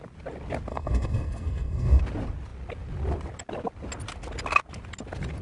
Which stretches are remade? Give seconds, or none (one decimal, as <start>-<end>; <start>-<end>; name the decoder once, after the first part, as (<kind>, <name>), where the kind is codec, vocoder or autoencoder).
0.7-2.0 (codec, SNAC)